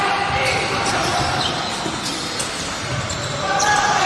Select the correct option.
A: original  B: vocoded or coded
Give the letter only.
B